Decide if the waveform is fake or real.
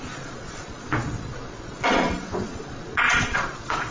fake